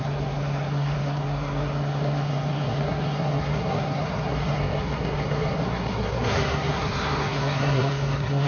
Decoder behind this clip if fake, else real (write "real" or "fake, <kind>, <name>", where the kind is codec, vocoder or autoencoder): fake, codec, SNAC